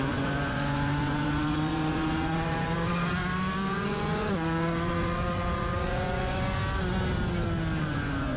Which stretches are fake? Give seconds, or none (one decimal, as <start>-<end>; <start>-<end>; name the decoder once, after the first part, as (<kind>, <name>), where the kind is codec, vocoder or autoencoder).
0.0-3.2 (vocoder, Vocos); 3.7-6.6; 7.8-8.4